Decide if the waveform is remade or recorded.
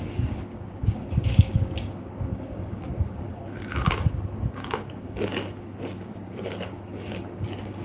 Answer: remade